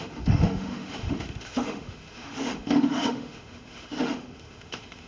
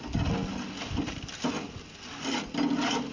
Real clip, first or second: second